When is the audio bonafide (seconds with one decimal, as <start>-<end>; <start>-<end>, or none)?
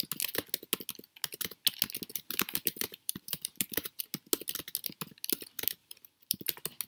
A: 0.0-2.1; 4.0-5.8; 6.4-6.9